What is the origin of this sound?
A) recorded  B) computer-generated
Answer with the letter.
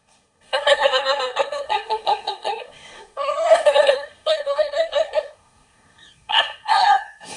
B